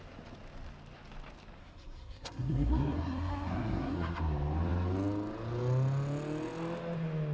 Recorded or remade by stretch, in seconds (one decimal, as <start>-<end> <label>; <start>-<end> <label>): 0.0-1.6 recorded; 1.6-4.2 remade; 4.2-7.3 recorded